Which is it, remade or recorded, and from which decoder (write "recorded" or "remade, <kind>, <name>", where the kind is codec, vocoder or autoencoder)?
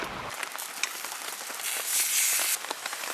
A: recorded